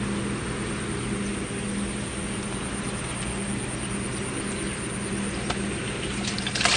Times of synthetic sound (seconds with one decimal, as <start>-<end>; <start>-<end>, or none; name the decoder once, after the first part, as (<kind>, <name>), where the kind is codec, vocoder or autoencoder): none